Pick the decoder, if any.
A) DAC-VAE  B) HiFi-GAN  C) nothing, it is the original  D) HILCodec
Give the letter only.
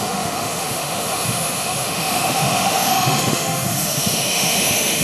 A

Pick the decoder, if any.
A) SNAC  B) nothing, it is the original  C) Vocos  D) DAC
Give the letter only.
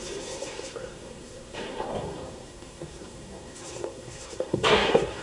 A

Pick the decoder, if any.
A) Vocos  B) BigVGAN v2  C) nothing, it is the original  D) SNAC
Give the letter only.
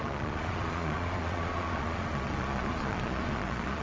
A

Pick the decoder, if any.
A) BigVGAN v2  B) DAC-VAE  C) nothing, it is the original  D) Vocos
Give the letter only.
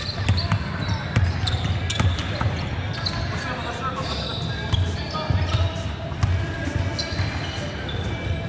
C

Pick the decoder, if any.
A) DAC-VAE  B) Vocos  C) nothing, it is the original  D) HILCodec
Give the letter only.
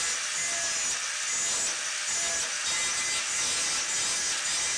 C